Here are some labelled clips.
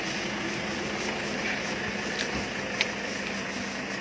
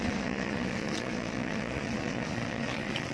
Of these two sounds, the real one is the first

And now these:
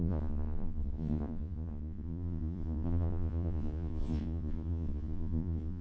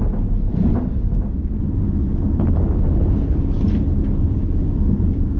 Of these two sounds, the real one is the second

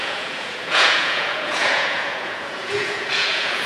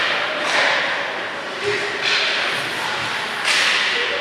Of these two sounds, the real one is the second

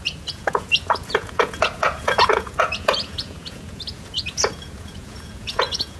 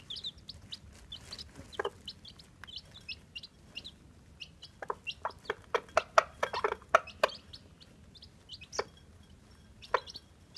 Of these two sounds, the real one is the second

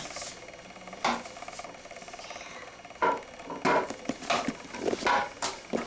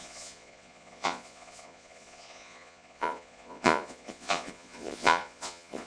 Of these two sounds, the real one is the first